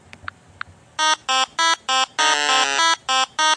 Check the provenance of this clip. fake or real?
real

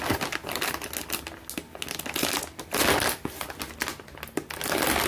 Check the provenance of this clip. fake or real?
real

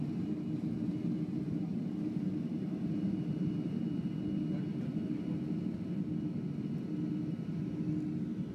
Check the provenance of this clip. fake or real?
real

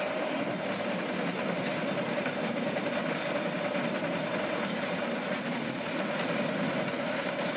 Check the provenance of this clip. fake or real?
real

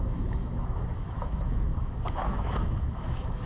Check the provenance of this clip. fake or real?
fake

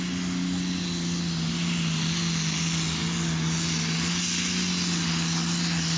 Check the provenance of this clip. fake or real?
real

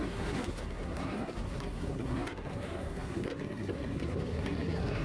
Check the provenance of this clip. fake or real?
fake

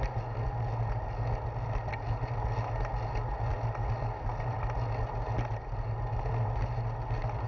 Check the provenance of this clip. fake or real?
real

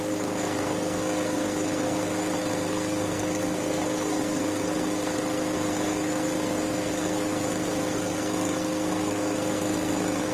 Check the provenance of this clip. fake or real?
fake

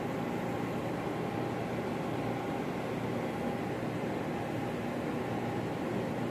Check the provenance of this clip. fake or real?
real